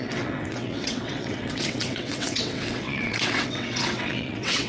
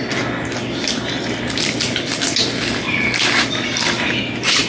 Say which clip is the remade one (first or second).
first